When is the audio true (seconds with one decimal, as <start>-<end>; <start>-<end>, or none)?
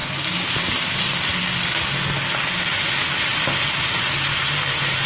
0.0-5.1